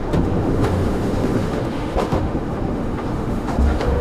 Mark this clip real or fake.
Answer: fake